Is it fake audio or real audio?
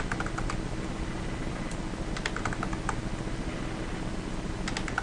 real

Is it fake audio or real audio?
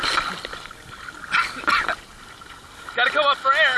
real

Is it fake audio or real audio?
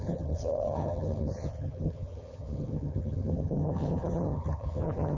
fake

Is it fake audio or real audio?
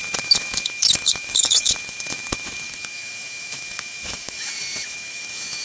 fake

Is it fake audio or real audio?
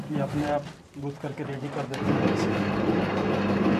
fake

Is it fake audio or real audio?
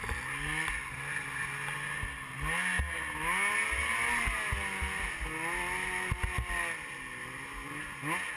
real